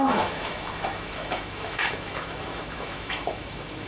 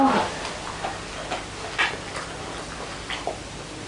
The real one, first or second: second